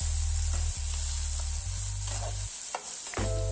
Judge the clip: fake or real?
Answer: real